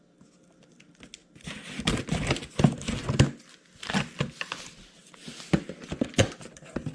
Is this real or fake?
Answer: real